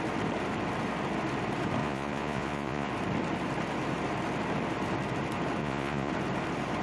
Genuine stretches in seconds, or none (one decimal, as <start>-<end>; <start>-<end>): 0.0-1.8; 2.9-5.6; 6.1-6.8